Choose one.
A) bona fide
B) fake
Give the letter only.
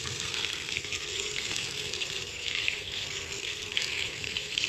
B